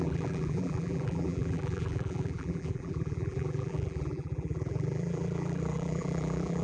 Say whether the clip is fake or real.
fake